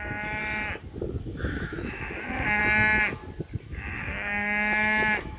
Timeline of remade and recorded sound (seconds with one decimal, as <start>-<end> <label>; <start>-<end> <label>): 0.0-0.4 remade; 0.4-1.2 recorded; 1.2-2.6 remade; 2.6-3.6 recorded; 3.6-5.4 remade